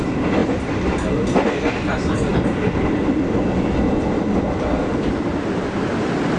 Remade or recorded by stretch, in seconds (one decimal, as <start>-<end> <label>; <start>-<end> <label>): 0.0-6.4 recorded